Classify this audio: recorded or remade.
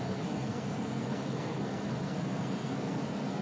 remade